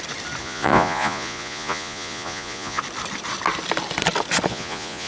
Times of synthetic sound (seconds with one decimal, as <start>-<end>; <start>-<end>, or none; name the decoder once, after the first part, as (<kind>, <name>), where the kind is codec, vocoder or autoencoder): 0.4-2.8 (vocoder, Vocos); 4.5-5.1